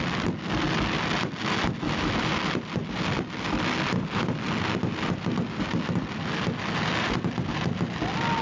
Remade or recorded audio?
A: recorded